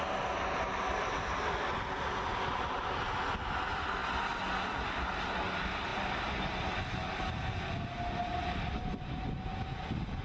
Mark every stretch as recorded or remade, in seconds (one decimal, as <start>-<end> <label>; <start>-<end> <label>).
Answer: 0.0-10.2 recorded